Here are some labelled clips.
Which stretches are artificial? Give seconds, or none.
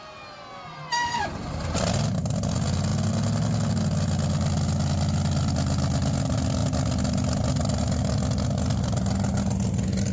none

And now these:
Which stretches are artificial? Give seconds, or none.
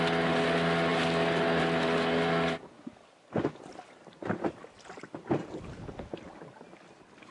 none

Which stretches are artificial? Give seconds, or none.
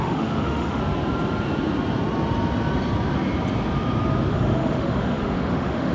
0.0-0.8; 4.3-5.9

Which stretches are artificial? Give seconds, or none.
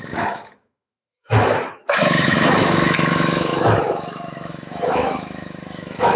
0.0-6.2